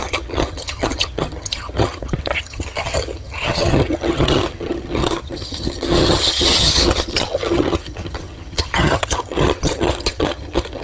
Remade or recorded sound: remade